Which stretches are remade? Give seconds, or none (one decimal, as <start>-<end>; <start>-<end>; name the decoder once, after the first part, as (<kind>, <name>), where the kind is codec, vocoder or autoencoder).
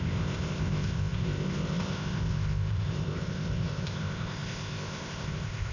0.0-5.7 (codec, ZipCodec)